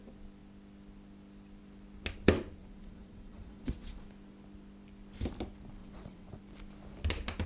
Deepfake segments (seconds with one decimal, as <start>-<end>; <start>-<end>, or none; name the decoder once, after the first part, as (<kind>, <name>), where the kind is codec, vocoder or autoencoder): 2.6-4.0 (vocoder, Vocos); 5.8-6.4